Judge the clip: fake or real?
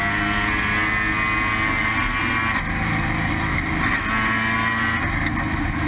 real